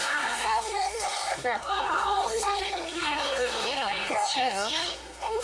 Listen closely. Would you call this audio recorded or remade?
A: remade